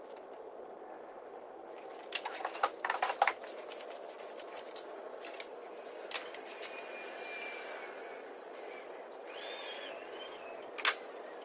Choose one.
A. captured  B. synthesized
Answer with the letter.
A